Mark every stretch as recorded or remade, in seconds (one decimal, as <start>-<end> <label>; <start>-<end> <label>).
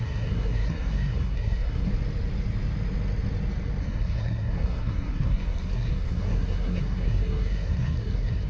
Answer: 0.0-1.9 remade; 1.9-3.8 recorded; 3.8-8.5 remade